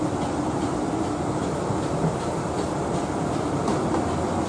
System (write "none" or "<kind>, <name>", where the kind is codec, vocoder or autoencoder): vocoder, BigVGAN v2